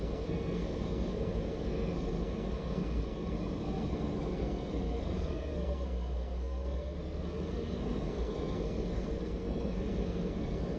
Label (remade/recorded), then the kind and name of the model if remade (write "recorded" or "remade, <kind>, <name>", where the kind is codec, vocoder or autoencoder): remade, codec, SNAC